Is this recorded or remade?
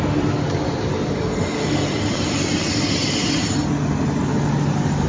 recorded